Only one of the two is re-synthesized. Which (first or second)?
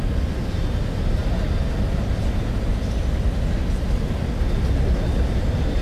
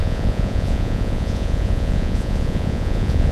second